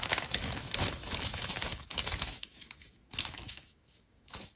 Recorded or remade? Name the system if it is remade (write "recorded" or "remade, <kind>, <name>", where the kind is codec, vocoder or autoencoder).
remade, autoencoder, DAC-VAE